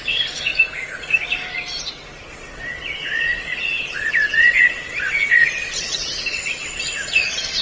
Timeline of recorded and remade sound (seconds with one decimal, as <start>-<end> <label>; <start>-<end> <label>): 0.0-0.5 remade; 0.5-2.3 recorded; 2.3-7.6 remade

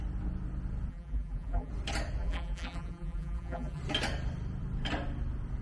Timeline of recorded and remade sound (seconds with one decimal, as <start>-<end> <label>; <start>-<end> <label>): 0.0-0.9 recorded; 0.9-1.7 remade; 1.7-2.2 recorded; 2.2-3.8 remade; 3.8-5.6 recorded

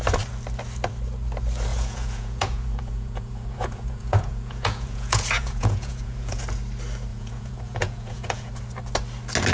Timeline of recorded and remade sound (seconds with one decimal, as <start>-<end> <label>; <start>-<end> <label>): 0.0-1.7 recorded; 1.7-6.4 remade; 6.4-7.1 recorded; 7.1-8.5 remade; 8.5-9.5 recorded

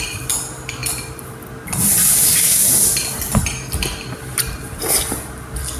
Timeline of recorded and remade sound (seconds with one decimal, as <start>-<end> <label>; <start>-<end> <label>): 0.0-5.8 recorded

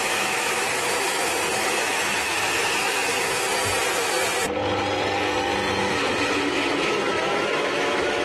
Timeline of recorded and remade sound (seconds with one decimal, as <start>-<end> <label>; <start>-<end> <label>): 0.0-3.5 remade; 3.5-5.8 recorded; 5.8-8.2 remade

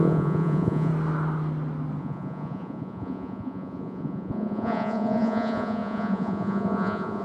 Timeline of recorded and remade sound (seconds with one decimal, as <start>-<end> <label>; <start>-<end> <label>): 0.0-0.9 remade; 0.9-2.0 recorded; 2.0-7.2 remade

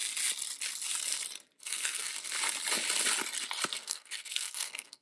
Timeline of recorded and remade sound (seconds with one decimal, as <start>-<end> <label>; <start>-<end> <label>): 0.0-1.6 recorded; 1.6-2.1 remade; 2.1-3.7 recorded; 3.7-5.0 remade